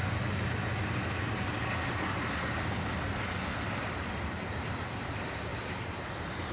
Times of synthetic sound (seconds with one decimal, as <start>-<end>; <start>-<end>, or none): 5.5-6.5